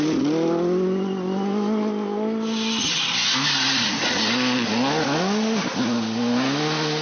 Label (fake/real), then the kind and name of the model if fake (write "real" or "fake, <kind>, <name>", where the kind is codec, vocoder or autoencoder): real